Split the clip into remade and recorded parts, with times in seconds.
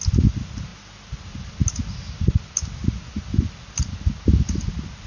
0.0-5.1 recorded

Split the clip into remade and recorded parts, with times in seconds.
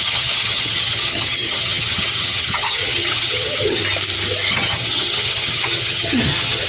0.0-3.8 remade; 3.8-4.5 recorded; 4.5-6.7 remade